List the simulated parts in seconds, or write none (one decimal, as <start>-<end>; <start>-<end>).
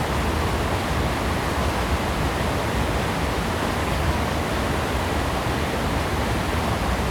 3.8-4.5